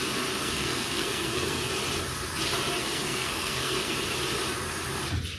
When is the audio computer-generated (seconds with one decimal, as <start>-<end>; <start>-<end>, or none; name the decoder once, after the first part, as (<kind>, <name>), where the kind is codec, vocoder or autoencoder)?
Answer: 0.4-1.7 (codec, SNAC); 2.8-3.9